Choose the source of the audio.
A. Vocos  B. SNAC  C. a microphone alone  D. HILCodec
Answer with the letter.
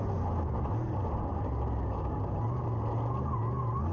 C